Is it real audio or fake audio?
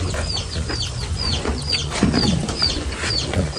fake